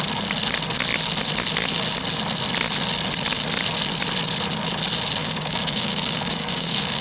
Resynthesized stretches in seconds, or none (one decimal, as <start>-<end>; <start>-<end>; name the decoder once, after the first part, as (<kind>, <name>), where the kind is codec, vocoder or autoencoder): 5.2-7.0 (codec, DAC)